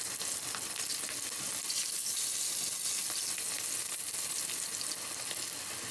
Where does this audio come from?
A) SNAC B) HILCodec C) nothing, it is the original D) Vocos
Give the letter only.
C